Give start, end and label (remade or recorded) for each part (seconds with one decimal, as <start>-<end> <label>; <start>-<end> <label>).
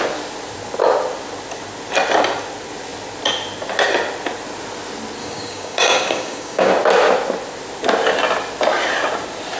0.0-5.2 recorded; 5.2-6.7 remade; 6.7-9.6 recorded